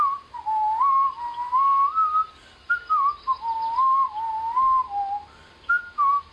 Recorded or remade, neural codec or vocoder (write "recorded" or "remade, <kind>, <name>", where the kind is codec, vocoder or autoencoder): recorded